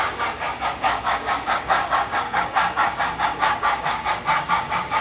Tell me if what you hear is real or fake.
fake